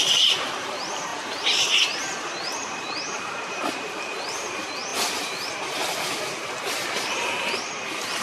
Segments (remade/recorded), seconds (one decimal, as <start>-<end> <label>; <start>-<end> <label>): 0.0-8.2 remade